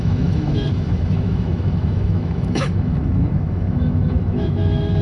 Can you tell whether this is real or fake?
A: fake